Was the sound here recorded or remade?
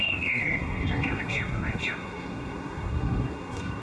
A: remade